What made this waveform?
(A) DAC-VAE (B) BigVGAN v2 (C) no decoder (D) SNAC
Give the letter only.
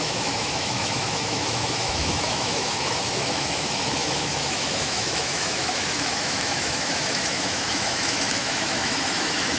A